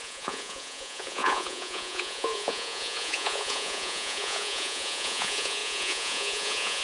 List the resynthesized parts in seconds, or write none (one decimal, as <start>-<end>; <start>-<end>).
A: 0.0-6.8